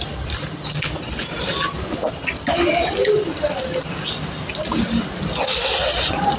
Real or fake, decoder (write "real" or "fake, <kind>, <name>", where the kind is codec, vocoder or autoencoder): real